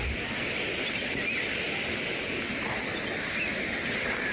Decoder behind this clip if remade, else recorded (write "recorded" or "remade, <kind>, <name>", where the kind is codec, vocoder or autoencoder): recorded